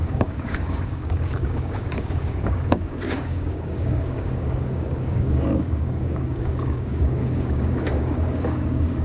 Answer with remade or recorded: remade